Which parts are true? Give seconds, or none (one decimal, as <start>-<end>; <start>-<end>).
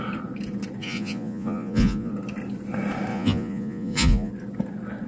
0.0-0.8; 2.1-3.1; 4.3-5.1